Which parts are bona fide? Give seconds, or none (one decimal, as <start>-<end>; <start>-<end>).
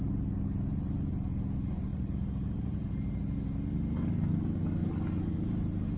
0.0-1.9; 3.2-4.8